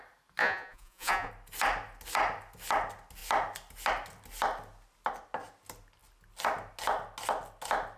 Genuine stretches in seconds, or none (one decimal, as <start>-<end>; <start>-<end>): 0.0-0.4; 1.3-8.0